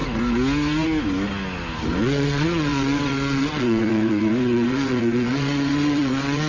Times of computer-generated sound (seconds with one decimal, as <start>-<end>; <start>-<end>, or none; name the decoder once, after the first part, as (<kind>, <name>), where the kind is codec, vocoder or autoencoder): 2.0-6.5 (vocoder, WaveNeXt)